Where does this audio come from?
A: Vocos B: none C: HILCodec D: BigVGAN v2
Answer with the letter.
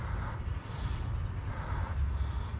B